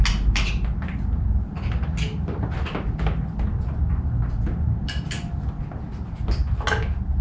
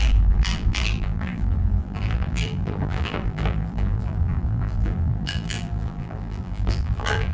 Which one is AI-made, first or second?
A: second